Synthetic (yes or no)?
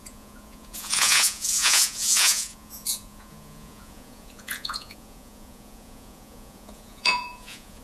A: yes